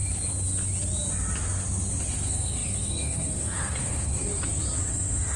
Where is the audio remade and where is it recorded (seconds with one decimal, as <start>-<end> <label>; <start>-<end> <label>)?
0.0-2.1 recorded; 2.1-4.3 remade; 4.3-4.9 recorded; 4.9-5.4 remade